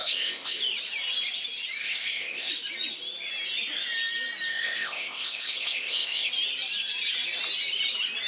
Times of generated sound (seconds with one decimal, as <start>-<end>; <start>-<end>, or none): 0.0-0.6; 1.8-2.5; 4.5-6.3